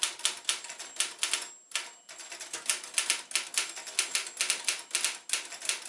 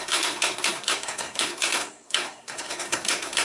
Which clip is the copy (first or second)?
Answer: second